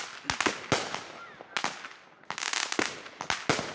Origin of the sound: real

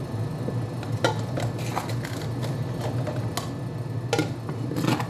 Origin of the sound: real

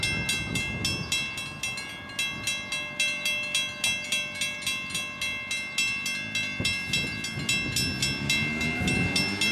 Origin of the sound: real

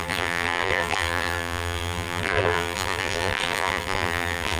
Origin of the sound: fake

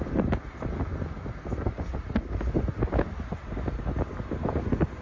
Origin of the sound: real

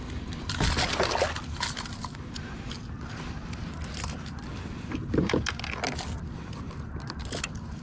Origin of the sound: real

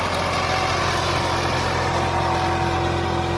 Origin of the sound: real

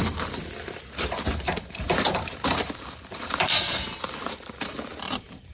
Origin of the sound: fake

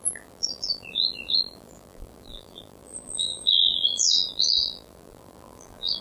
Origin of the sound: fake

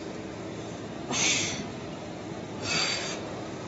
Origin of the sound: fake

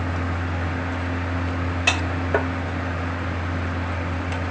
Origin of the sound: real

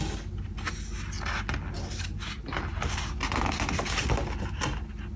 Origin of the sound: real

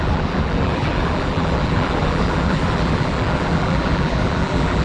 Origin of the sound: fake